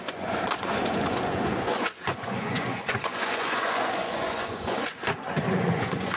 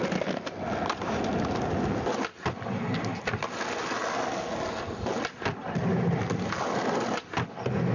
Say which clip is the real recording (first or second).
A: second